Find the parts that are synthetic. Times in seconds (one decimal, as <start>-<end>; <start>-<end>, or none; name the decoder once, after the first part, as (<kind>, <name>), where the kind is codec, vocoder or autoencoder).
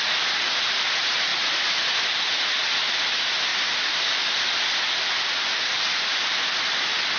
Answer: 1.3-2.1 (vocoder, BigVGAN v2); 3.5-4.1